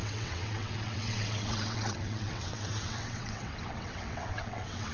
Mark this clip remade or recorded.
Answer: remade